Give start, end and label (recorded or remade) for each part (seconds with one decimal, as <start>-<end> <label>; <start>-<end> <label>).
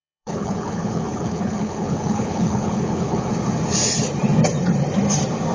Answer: 0.0-3.3 remade; 3.3-5.5 recorded